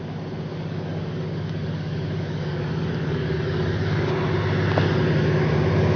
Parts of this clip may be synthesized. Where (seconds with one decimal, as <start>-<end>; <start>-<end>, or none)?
0.5-4.1